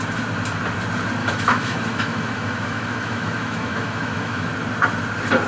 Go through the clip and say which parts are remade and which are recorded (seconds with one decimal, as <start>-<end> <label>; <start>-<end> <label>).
0.0-1.2 recorded; 1.2-4.5 remade; 4.5-5.5 recorded